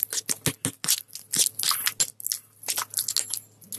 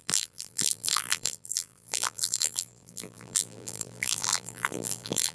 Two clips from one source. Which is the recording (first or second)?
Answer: first